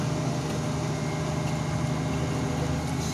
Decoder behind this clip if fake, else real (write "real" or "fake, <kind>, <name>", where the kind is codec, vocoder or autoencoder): real